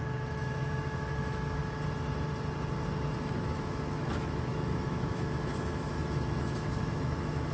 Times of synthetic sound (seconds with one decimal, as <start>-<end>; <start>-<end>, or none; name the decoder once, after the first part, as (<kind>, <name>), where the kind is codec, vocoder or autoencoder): 0.0-1.6 (autoencoder, DAC-VAE); 3.2-7.5